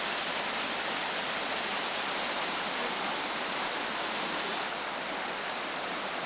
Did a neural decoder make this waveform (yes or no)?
yes